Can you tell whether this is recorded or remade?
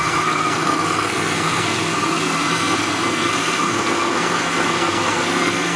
remade